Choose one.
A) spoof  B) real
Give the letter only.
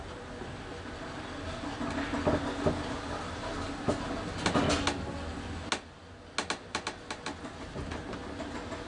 B